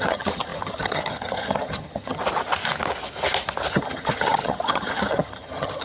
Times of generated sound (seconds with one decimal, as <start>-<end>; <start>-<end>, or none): 0.0-2.2; 3.7-5.8